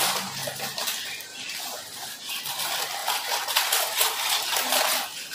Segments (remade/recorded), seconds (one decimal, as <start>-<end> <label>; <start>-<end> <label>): 0.0-0.4 recorded; 0.4-2.4 remade; 2.4-5.3 recorded